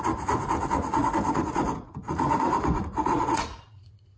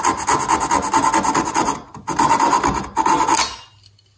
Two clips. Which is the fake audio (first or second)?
first